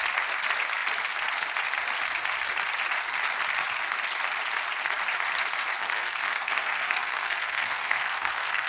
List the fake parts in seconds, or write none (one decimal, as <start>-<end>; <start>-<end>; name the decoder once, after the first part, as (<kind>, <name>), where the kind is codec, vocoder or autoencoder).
5.8-8.7 (codec, SNAC)